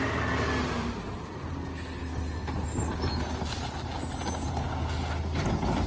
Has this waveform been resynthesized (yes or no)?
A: no